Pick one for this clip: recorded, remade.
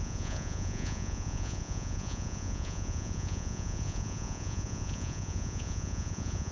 remade